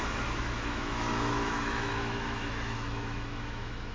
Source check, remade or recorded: remade